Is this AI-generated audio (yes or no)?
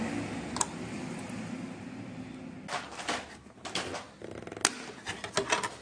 no